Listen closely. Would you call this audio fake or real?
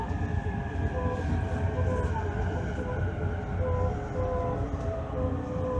real